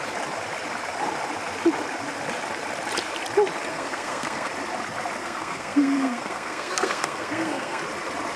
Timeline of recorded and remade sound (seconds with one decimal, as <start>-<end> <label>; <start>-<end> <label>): 0.0-3.7 recorded; 3.7-4.5 remade; 4.5-5.2 recorded; 5.2-7.8 remade; 7.8-8.4 recorded